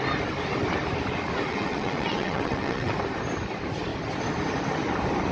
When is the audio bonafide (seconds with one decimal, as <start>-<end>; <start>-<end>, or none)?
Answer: 0.0-1.5; 2.9-5.3